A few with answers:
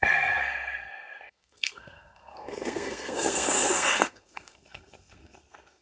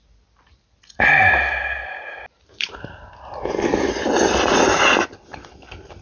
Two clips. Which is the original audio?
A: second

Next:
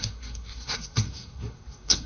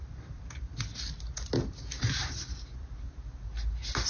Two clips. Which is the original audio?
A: second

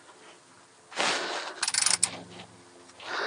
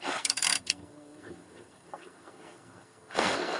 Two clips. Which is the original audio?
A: first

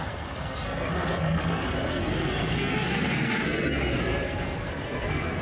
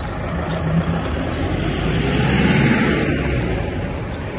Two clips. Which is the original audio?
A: second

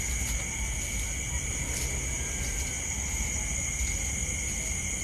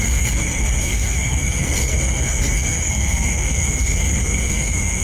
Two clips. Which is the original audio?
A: first